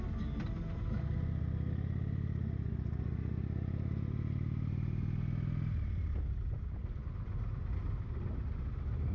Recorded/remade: recorded